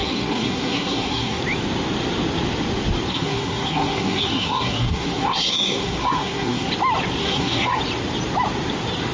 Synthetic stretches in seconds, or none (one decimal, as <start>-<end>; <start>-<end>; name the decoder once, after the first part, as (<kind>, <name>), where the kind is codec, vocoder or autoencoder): 0.0-1.4 (codec, SNAC); 3.1-6.7; 7.2-7.8